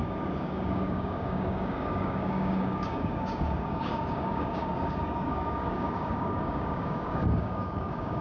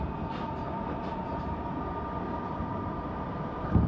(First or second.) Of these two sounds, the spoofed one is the first